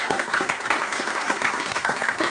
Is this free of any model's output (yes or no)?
no